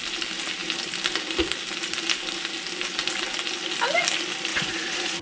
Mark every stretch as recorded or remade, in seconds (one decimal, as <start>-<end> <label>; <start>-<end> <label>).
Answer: 0.0-4.5 recorded; 4.5-5.2 remade